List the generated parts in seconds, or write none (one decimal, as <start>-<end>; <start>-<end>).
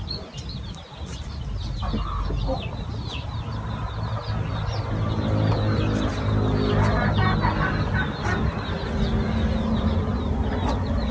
none